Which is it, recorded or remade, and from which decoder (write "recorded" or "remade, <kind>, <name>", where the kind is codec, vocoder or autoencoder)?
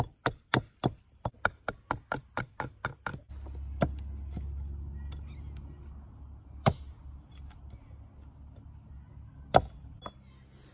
recorded